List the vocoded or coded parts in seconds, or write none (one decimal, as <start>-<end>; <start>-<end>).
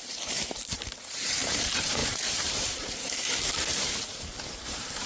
0.0-5.1